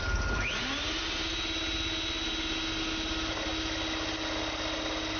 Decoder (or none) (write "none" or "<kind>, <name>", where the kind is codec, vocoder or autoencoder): none